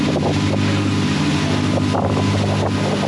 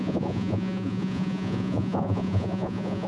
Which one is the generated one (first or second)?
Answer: second